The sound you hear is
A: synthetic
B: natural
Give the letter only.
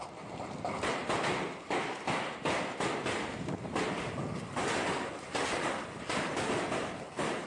B